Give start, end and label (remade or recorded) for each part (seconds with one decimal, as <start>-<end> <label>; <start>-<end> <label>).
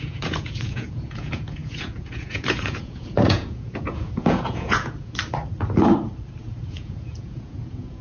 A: 0.0-5.2 remade; 5.2-6.4 recorded; 6.4-8.0 remade